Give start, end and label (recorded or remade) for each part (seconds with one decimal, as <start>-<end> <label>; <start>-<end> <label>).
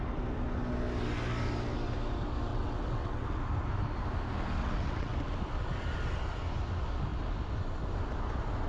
0.0-2.5 recorded; 2.5-3.4 remade; 3.4-4.6 recorded; 4.6-5.1 remade; 5.1-8.7 recorded